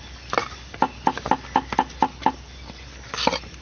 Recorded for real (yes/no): yes